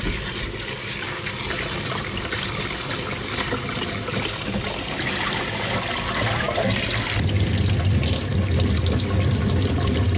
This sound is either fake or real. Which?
real